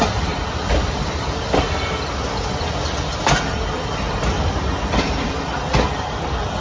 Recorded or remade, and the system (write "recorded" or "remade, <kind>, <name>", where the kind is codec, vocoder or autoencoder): recorded